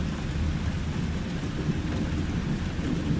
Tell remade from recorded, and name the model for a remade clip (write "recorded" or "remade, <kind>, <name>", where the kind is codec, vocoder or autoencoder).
recorded